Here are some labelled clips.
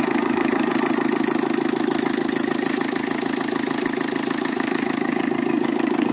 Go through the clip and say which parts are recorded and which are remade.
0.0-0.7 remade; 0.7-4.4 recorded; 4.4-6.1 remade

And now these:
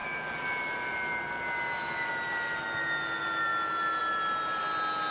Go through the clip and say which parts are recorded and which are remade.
0.0-5.1 recorded